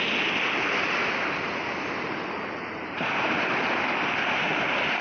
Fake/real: real